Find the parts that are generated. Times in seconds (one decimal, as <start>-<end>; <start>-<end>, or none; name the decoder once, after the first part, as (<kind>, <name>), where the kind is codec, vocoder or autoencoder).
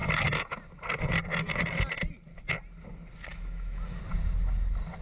3.3-4.0 (autoencoder, DAC-VAE)